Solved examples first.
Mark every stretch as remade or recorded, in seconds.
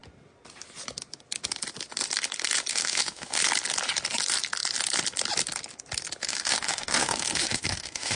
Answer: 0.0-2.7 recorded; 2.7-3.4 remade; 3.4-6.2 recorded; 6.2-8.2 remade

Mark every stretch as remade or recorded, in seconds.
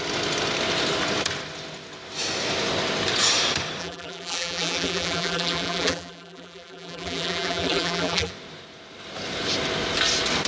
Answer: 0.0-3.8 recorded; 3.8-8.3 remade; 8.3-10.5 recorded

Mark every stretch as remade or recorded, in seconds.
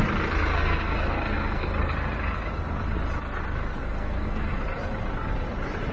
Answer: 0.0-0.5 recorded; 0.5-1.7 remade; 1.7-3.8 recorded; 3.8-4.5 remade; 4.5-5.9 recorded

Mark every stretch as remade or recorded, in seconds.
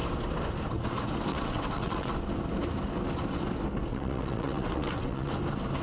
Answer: 0.0-1.3 recorded; 1.3-2.1 remade; 2.1-3.9 recorded; 3.9-5.3 remade; 5.3-5.8 recorded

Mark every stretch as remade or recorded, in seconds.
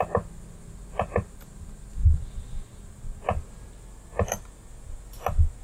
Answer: 0.0-5.6 recorded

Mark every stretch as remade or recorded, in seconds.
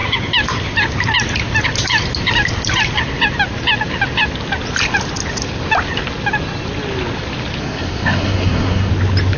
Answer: 0.0-7.6 recorded; 7.6-8.9 remade; 8.9-9.4 recorded